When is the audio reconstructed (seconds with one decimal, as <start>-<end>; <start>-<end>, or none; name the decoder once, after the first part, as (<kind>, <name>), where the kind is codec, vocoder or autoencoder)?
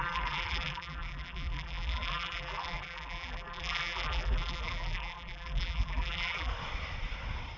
0.0-6.5 (vocoder, BigVGAN v2)